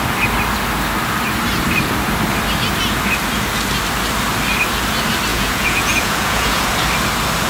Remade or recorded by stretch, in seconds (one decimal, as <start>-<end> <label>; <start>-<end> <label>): 0.0-5.3 recorded; 5.3-6.7 remade; 6.7-7.5 recorded